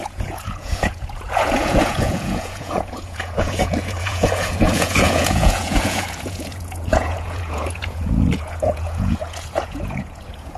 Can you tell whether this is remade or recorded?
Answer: remade